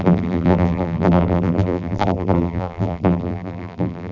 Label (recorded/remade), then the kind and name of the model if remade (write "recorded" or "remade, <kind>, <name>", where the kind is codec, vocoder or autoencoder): remade, vocoder, BigVGAN v2